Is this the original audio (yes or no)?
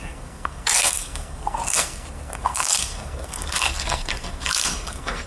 no